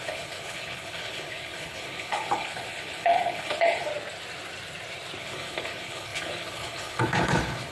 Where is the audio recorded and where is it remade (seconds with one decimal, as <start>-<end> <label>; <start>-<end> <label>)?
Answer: 0.0-3.9 remade; 3.9-5.2 recorded; 5.2-7.7 remade